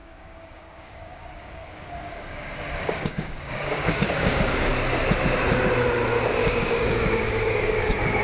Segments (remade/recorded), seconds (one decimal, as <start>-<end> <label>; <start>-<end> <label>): 0.0-4.7 remade; 4.7-6.4 recorded; 6.4-8.2 remade